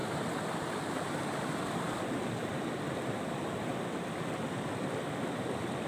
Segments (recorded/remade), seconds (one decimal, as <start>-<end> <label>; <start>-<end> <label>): 0.0-0.8 recorded; 0.8-3.7 remade; 3.7-5.9 recorded